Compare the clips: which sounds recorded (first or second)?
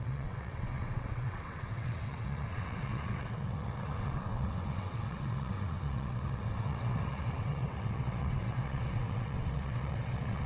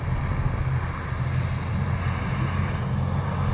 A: second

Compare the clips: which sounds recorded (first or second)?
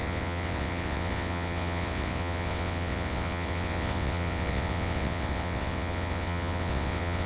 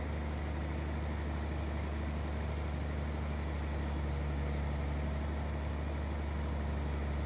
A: second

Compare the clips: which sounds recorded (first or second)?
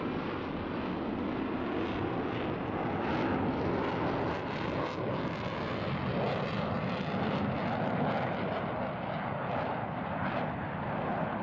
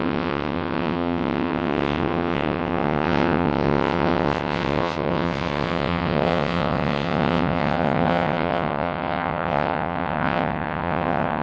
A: first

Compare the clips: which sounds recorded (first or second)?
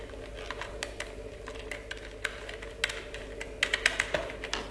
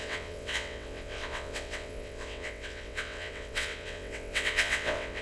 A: first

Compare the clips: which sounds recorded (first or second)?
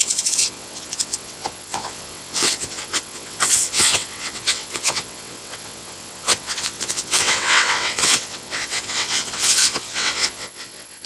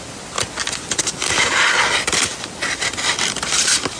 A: second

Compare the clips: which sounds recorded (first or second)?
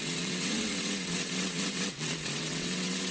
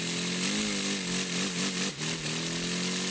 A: second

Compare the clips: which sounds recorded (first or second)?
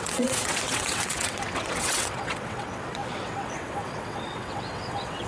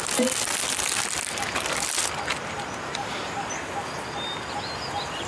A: second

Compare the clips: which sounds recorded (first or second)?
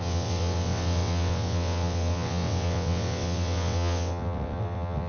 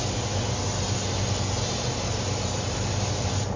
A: second